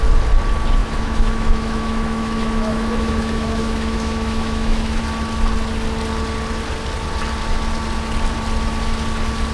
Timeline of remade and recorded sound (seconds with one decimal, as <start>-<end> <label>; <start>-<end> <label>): 0.0-0.8 recorded; 0.8-5.0 remade; 5.0-9.5 recorded